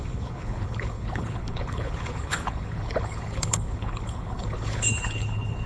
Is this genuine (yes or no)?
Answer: no